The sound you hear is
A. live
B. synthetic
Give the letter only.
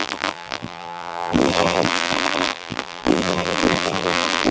B